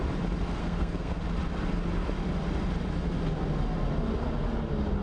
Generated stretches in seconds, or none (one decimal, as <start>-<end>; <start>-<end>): 0.6-1.2